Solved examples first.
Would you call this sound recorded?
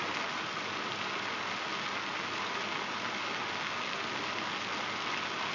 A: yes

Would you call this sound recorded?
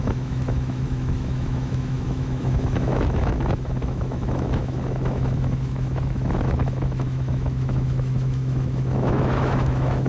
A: no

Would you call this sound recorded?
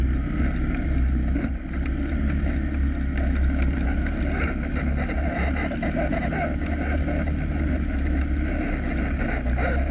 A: yes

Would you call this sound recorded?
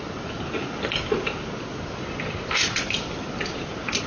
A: yes